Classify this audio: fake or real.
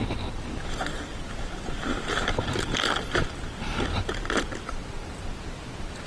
real